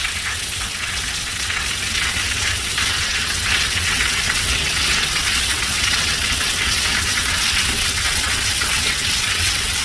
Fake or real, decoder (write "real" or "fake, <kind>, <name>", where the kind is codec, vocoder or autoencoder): fake, vocoder, WaveNeXt